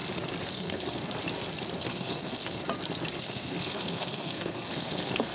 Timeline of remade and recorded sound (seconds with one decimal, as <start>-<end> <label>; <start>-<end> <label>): 0.0-0.5 recorded; 0.5-1.0 remade; 1.0-1.8 recorded; 1.8-2.6 remade; 2.6-3.2 recorded; 3.2-5.3 remade